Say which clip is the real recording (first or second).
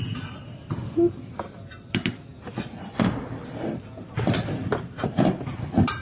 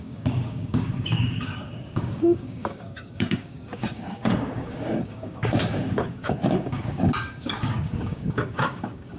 first